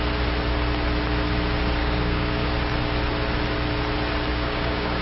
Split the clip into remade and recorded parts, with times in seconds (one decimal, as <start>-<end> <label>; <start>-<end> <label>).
0.0-1.8 recorded; 1.8-2.5 remade; 2.5-4.3 recorded; 4.3-5.0 remade